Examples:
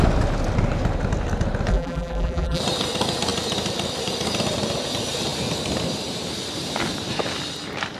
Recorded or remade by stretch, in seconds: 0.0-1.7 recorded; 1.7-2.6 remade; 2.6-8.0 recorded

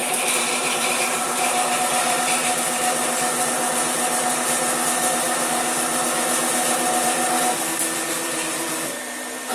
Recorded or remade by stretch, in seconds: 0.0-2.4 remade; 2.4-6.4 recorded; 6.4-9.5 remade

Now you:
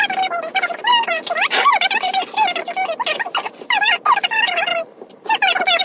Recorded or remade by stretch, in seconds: 0.0-0.8 recorded; 0.8-2.6 remade; 2.6-4.7 recorded; 4.7-5.8 remade